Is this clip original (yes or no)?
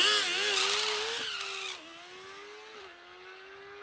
yes